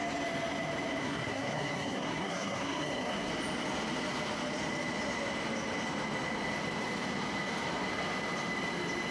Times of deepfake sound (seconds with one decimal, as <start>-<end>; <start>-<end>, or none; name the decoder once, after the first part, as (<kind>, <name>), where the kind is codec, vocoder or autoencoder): 1.0-3.3 (codec, SNAC)